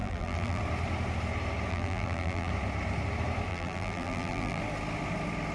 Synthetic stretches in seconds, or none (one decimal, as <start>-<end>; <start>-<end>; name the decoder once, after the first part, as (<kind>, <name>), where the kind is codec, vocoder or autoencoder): 0.0-0.6 (vocoder, BigVGAN v2); 1.7-2.5; 3.5-4.6